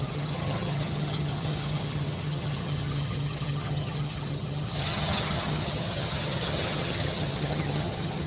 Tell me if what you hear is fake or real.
fake